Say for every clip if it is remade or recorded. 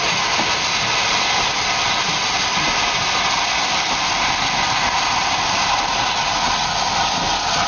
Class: recorded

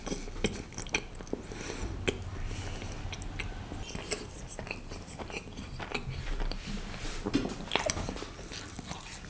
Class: recorded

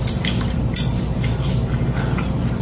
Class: recorded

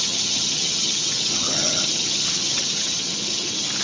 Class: remade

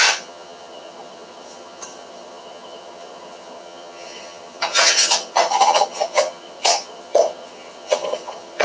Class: remade